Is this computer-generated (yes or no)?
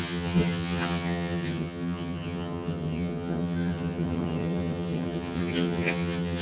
yes